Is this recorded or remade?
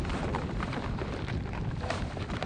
remade